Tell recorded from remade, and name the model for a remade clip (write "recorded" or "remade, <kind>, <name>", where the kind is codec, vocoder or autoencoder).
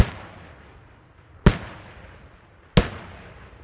recorded